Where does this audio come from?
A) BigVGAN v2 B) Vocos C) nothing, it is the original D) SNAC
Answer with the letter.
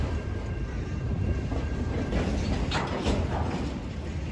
C